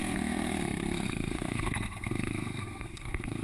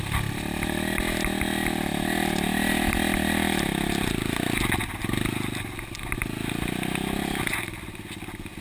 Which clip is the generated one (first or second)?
first